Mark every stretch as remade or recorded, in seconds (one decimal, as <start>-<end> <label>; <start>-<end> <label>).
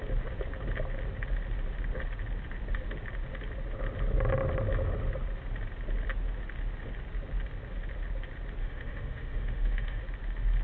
0.0-8.6 recorded; 8.6-10.0 remade; 10.0-10.6 recorded